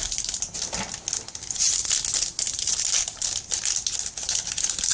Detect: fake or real real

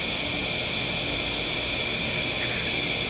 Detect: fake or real real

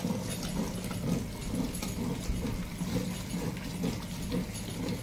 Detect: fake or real real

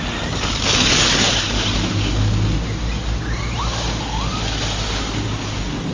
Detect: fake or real real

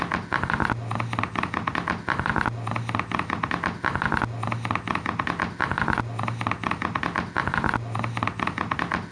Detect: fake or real real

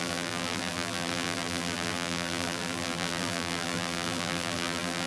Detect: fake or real fake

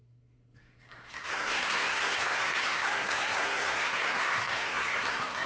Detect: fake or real fake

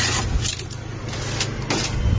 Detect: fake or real real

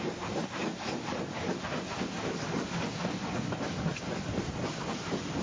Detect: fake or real real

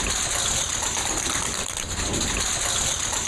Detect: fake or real real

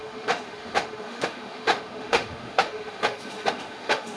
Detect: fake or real fake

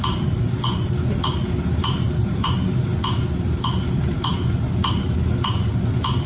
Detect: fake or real real